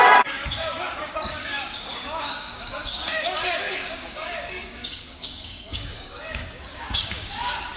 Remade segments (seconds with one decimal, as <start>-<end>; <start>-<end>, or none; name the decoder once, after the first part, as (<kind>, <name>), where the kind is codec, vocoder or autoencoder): 0.0-7.8 (codec, DAC)